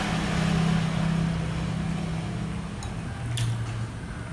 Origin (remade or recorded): recorded